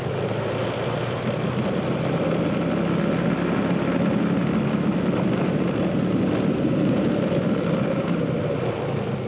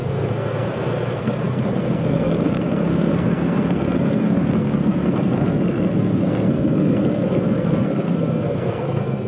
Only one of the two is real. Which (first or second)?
first